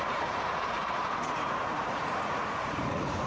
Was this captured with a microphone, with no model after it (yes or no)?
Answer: no